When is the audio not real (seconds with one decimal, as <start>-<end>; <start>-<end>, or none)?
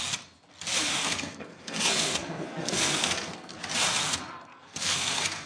0.9-3.6; 4.5-5.5